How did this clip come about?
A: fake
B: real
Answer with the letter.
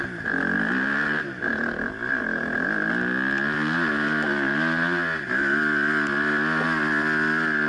B